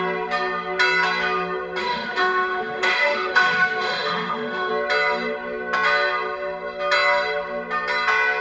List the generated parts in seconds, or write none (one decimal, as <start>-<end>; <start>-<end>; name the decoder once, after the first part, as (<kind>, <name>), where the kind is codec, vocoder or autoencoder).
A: 1.8-4.7 (autoencoder, DAC-VAE)